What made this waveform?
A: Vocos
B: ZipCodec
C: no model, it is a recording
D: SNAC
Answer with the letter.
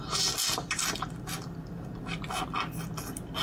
C